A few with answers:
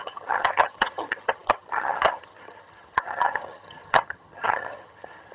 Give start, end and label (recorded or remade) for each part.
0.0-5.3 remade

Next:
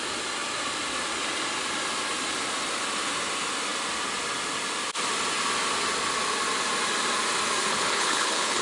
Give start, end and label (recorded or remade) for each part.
0.0-7.7 recorded; 7.7-8.6 remade

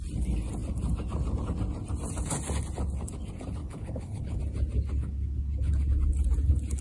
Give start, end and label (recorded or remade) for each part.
0.0-3.6 recorded; 3.6-4.4 remade; 4.4-5.0 recorded; 5.0-5.7 remade; 5.7-6.8 recorded

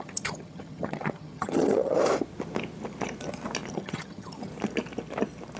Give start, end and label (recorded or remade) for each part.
0.0-2.0 remade; 2.0-3.7 recorded; 3.7-4.5 remade; 4.5-5.6 recorded

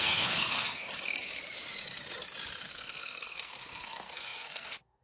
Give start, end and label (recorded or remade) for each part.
0.0-1.3 remade; 1.3-2.7 recorded; 2.7-5.0 remade